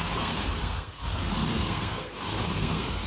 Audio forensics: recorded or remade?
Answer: remade